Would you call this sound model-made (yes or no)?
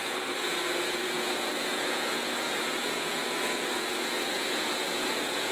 yes